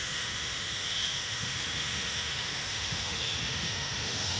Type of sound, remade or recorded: remade